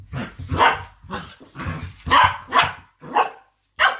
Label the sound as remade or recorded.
recorded